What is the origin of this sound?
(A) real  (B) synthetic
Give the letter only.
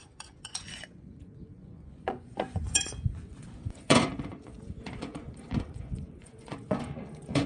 B